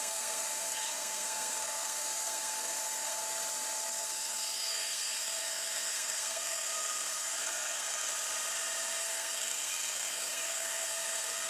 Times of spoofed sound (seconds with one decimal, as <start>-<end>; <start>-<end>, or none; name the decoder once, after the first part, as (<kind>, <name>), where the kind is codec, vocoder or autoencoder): 0.0-3.2 (codec, SNAC); 4.0-8.1; 9.0-11.5